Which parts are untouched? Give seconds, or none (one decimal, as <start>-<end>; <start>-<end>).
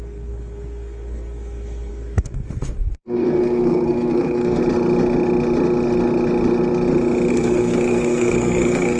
4.6-7.3